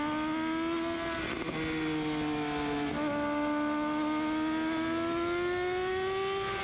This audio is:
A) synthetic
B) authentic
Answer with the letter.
B